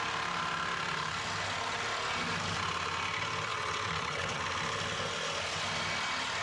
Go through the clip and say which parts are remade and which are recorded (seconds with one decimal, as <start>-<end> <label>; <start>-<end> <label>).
0.0-3.5 recorded; 3.5-4.4 remade; 4.4-6.4 recorded